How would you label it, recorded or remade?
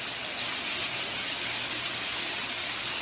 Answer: recorded